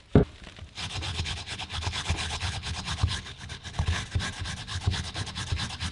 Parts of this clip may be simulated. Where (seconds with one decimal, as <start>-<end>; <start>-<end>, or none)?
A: 1.1-4.0; 4.7-5.3